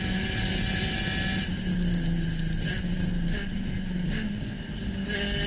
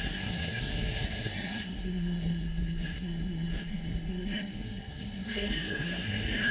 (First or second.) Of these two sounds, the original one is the first